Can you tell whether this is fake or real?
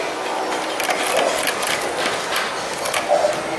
real